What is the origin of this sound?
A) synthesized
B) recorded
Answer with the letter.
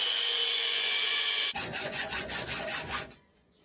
A